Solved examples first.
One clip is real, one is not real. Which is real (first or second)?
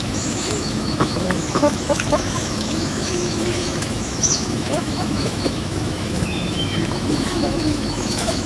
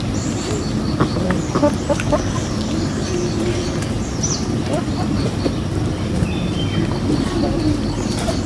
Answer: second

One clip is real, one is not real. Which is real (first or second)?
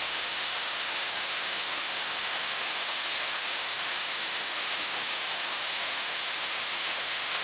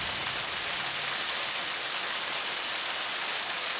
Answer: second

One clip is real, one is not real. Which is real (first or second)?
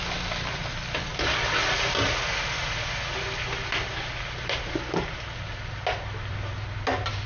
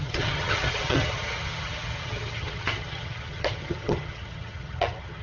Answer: first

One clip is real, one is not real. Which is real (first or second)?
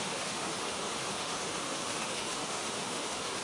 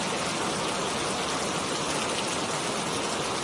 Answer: second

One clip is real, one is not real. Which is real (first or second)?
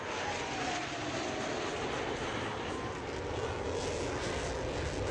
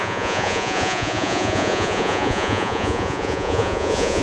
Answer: first